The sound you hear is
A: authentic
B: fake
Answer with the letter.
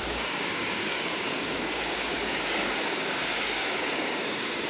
B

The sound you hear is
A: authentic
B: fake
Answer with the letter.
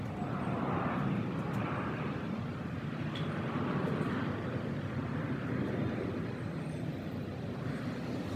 B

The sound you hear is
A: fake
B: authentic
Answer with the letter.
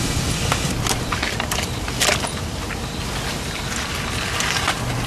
B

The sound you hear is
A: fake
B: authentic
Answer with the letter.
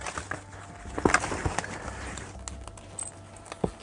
B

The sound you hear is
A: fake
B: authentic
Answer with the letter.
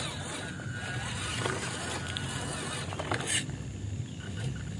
B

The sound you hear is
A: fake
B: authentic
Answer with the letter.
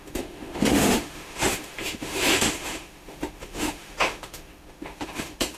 A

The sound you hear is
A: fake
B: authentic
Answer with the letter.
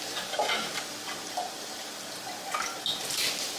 B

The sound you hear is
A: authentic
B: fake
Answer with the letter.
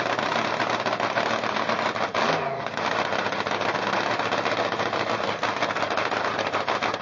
A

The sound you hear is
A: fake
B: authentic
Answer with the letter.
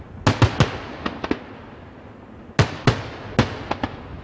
B